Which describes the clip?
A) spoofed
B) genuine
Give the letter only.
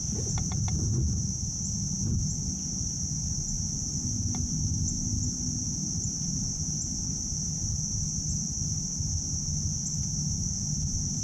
B